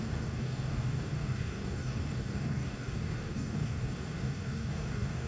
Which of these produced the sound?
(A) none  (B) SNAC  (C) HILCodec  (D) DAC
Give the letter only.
D